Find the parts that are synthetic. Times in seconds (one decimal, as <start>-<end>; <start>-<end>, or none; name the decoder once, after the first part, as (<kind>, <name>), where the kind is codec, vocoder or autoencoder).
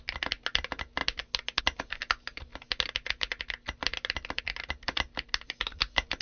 none